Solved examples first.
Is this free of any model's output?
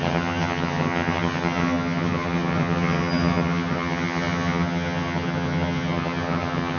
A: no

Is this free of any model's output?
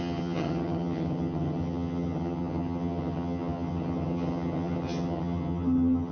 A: no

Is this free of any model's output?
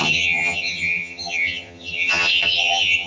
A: no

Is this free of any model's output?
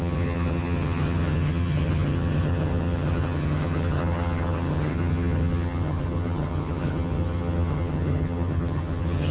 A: no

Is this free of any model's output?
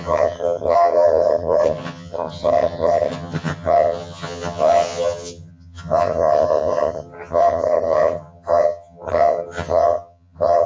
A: no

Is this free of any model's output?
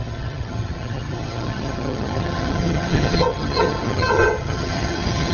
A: no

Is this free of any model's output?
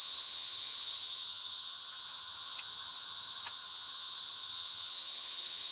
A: no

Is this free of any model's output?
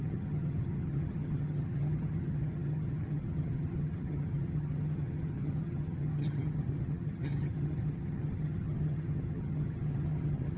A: no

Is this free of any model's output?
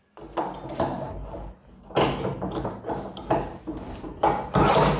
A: yes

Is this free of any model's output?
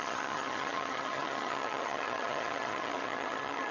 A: no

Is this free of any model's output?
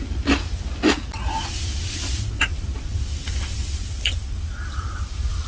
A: yes